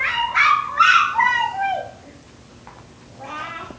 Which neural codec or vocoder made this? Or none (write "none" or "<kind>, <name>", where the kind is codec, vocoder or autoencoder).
none